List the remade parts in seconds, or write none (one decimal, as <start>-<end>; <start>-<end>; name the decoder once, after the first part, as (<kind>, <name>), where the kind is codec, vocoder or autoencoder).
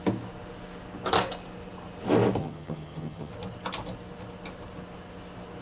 2.4-3.3 (vocoder, HiFi-GAN)